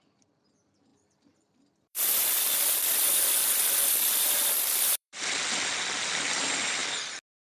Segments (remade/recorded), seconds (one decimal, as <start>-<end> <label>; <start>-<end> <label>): 0.0-0.9 recorded; 0.9-5.4 remade; 5.4-7.5 recorded